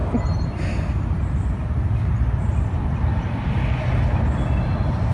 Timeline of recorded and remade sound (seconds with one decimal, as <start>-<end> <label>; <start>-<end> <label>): 0.0-5.1 recorded